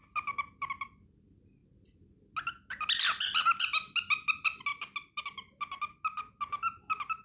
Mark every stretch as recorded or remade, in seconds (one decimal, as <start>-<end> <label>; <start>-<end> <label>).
0.0-7.2 recorded